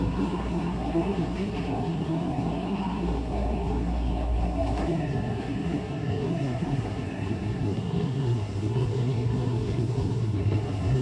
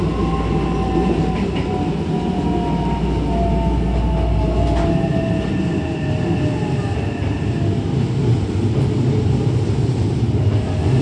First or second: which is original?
second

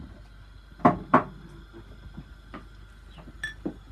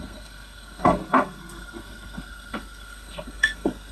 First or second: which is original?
first